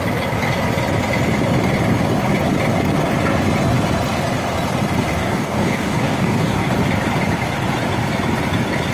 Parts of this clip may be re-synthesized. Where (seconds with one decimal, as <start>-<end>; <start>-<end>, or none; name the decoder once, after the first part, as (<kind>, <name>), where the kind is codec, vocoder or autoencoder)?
5.2-6.7 (codec, DAC)